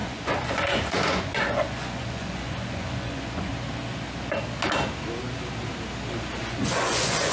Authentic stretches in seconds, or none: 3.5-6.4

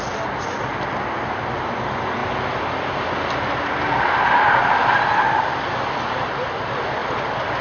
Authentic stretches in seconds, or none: 0.0-7.6

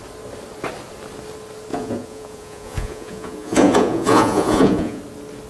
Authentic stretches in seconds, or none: 0.0-1.7; 5.0-5.5

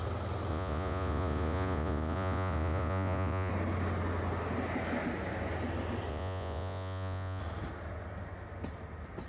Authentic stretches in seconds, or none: 0.0-0.5; 3.5-6.1; 7.4-9.3